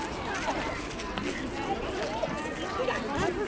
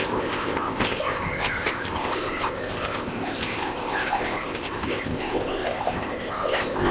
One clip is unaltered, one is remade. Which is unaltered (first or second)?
first